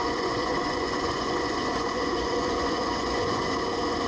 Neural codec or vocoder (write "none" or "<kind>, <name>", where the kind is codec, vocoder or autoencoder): vocoder, Vocos